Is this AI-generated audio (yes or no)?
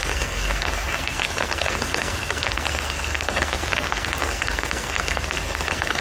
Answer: yes